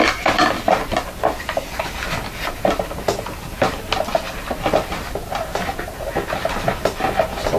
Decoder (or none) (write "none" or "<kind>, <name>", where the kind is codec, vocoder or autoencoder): none